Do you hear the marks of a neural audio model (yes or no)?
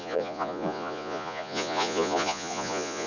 yes